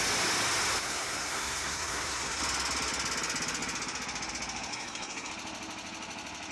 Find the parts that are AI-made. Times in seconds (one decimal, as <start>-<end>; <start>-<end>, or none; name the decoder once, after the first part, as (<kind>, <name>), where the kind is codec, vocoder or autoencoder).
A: 0.8-2.4 (codec, SNAC); 4.7-5.3